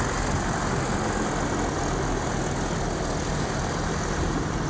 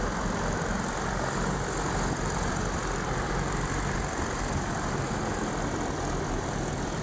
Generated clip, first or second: second